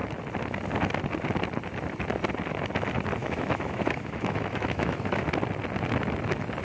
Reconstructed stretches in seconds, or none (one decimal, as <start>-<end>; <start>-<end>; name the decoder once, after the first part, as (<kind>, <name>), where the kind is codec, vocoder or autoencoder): 3.2-5.2 (autoencoder, DAC-VAE)